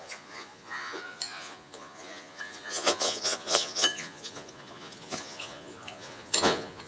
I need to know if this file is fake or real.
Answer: fake